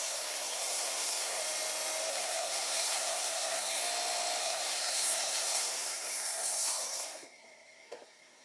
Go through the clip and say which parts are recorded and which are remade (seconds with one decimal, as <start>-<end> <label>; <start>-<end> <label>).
0.0-1.4 remade; 1.4-2.1 recorded; 2.1-3.8 remade; 3.8-4.4 recorded; 4.4-8.4 remade